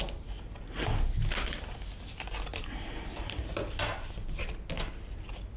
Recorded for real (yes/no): yes